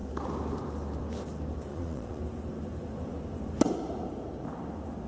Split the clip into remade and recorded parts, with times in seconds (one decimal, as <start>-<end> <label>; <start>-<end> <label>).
0.0-1.7 recorded; 1.7-2.2 remade; 2.2-5.1 recorded